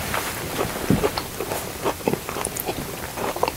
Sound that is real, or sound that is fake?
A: fake